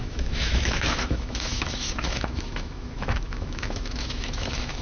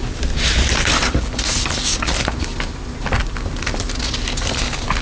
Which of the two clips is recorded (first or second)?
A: second